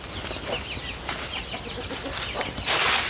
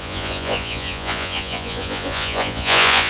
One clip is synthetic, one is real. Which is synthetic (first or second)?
second